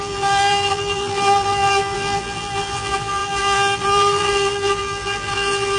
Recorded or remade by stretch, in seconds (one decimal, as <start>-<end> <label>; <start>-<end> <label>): 0.0-5.8 remade